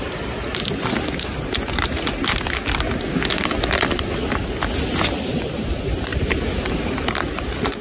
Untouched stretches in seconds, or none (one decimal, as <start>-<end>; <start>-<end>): 0.0-6.1

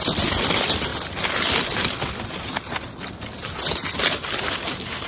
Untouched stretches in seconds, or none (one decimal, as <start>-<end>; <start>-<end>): 0.0-5.1

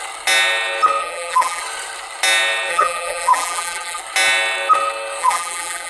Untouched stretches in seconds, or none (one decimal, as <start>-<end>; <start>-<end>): 0.0-1.0; 1.6-2.7; 4.0-5.2

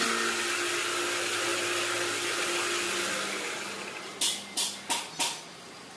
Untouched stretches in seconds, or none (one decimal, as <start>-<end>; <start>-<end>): 0.0-6.0

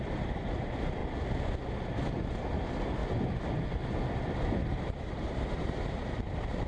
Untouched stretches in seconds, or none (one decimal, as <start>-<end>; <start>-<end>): 1.0-2.1; 3.0-4.8

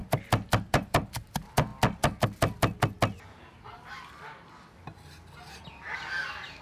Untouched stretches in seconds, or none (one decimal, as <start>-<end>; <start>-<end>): 0.0-0.7; 1.7-5.7